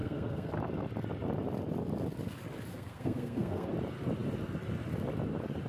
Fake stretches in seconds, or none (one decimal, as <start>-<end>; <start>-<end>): 0.0-0.5; 2.7-3.7